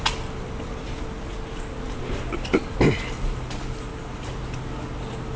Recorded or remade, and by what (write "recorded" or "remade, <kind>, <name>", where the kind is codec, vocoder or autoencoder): recorded